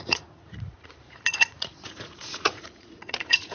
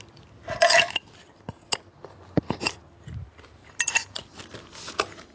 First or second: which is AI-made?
first